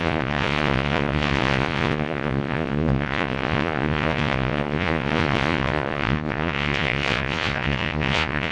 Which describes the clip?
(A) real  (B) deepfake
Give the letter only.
B